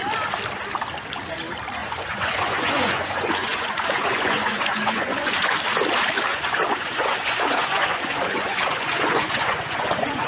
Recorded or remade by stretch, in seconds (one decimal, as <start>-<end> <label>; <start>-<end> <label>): 0.0-1.8 recorded; 1.8-5.6 remade; 5.6-6.3 recorded; 6.3-10.3 remade